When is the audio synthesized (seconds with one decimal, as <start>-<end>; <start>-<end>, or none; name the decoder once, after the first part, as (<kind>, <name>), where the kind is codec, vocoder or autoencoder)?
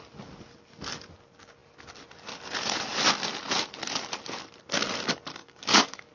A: 5.4-6.1 (codec, DAC)